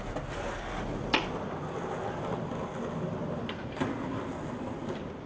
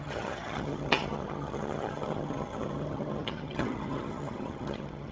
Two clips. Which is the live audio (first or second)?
first